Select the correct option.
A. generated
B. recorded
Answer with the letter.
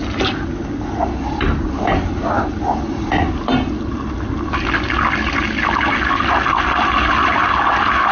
B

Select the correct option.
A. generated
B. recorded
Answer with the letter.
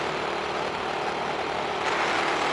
B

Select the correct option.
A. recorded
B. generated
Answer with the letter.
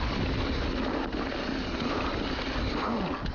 A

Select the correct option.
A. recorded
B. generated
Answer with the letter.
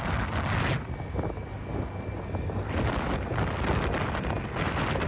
A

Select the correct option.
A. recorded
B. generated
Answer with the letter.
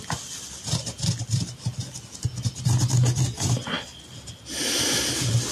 A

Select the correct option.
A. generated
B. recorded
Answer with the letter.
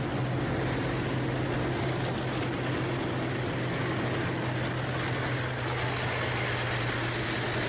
B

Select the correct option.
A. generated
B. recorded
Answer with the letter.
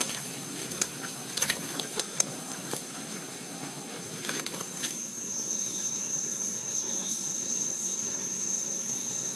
A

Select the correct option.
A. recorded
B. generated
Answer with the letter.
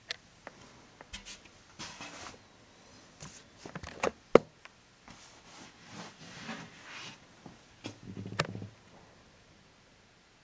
A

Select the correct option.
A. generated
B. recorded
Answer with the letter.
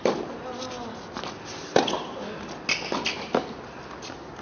B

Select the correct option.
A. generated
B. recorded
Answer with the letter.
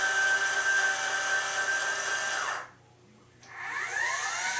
B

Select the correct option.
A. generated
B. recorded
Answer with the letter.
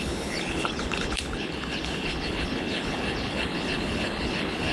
A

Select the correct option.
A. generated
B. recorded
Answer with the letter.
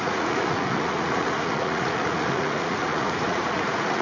A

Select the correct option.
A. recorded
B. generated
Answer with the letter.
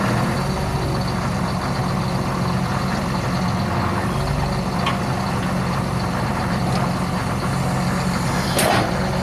A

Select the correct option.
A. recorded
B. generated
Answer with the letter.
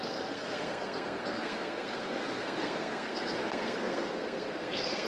B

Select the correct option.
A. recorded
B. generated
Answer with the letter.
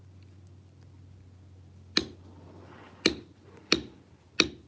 A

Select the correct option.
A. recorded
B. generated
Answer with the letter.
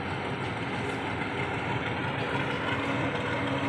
A